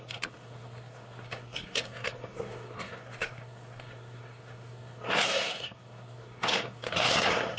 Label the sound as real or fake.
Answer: fake